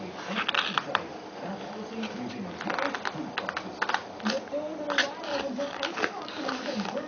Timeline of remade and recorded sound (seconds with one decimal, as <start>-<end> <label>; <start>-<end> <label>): 0.0-5.3 recorded; 5.3-7.1 remade

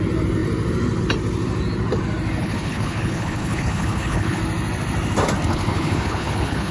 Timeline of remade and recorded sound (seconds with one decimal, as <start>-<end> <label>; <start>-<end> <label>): 0.0-2.4 recorded; 2.4-4.4 remade; 4.4-5.5 recorded; 5.5-6.7 remade

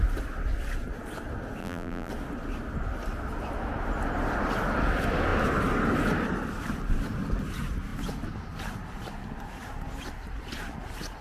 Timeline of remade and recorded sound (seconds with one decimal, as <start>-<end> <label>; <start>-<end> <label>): 0.0-1.6 recorded; 1.6-2.1 remade; 2.1-11.2 recorded

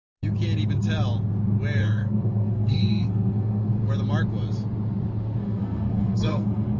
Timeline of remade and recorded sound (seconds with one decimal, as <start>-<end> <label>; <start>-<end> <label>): 0.0-1.8 recorded; 1.8-3.8 remade; 3.8-5.4 recorded; 5.4-6.8 remade

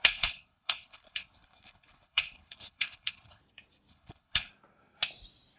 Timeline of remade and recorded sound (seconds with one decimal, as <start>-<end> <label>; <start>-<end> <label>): 0.0-3.4 remade; 3.4-3.9 recorded; 3.9-4.5 remade; 4.5-5.6 recorded

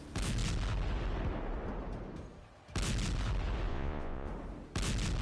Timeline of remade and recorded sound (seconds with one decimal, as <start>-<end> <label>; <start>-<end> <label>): 0.0-3.7 recorded; 3.7-4.3 remade; 4.3-5.2 recorded